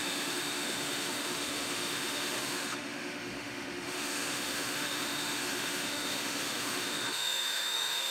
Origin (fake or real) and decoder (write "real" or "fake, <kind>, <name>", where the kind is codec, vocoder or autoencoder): fake, autoencoder, DAC-VAE